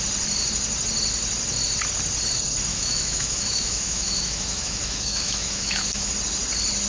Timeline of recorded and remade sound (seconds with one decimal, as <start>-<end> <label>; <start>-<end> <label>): 0.0-2.7 recorded; 2.7-6.1 remade; 6.1-6.9 recorded